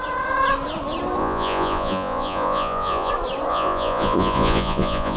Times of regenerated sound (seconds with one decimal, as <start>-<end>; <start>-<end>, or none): 1.2-3.1; 3.5-5.2